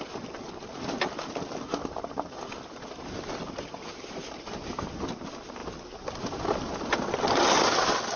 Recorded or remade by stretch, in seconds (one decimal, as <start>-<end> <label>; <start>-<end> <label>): 0.0-8.2 recorded